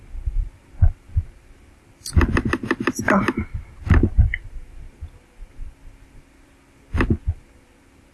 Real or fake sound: real